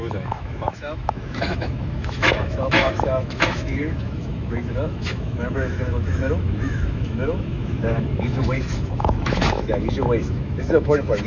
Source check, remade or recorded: remade